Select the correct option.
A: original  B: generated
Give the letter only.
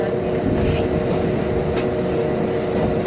A